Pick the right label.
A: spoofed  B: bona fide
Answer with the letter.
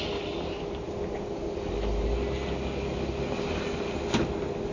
B